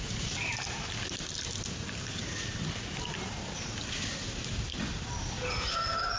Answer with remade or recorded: recorded